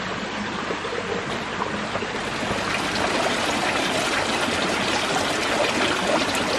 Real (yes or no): yes